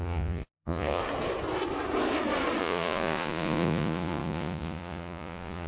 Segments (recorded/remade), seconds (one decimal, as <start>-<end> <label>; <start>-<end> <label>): 0.0-1.0 remade; 1.0-2.6 recorded; 2.6-5.7 remade